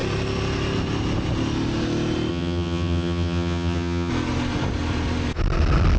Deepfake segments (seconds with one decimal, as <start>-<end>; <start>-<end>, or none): 2.3-4.1